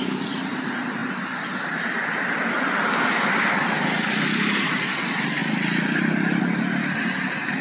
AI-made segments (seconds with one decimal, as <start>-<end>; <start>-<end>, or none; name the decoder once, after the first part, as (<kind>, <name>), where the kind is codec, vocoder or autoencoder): 5.4-6.4 (vocoder, BigVGAN v2)